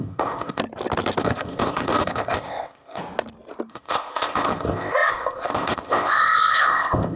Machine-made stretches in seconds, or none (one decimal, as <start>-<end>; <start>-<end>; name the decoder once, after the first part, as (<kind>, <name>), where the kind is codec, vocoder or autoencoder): 0.0-0.6 (codec, ZipCodec); 1.2-3.0; 3.7-7.2